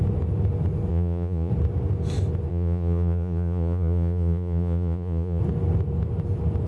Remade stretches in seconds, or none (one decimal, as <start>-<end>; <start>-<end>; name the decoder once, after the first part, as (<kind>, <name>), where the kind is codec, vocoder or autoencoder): 0.9-1.5 (vocoder, Vocos); 2.5-5.4